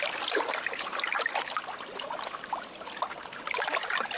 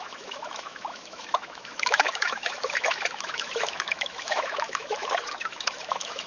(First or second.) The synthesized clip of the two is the second